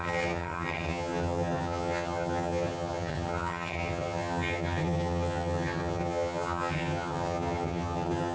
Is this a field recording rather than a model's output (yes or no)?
no